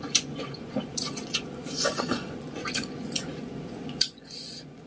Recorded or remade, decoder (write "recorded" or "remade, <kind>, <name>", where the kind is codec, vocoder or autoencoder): remade, vocoder, Vocos